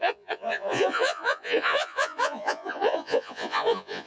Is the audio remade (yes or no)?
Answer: yes